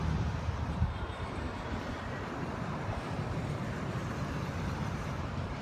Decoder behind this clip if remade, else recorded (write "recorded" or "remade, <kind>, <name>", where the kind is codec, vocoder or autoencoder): remade, vocoder, BigVGAN v2